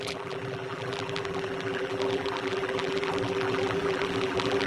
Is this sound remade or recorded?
remade